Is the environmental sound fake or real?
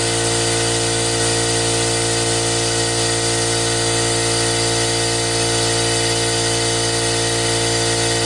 real